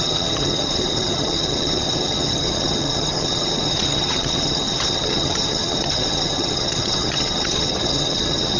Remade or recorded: remade